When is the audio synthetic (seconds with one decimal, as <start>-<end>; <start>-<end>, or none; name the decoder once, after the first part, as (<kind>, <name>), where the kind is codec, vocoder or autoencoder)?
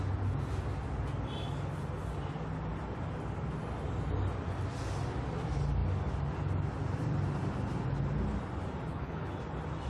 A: 8.9-9.4 (codec, HILCodec)